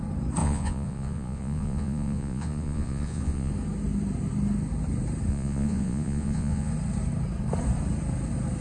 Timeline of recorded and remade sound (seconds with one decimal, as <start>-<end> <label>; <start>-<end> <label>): 0.0-0.4 recorded; 0.4-3.5 remade; 3.5-5.3 recorded; 5.3-6.7 remade; 6.7-8.6 recorded